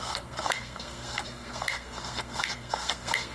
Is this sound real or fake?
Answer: fake